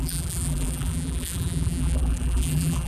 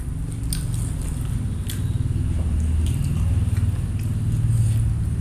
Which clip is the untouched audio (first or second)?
second